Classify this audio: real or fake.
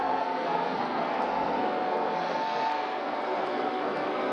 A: fake